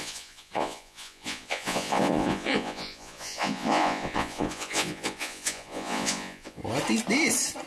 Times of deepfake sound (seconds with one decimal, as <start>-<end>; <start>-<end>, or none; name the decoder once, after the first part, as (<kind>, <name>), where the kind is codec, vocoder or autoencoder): 0.0-6.6 (vocoder, Vocos)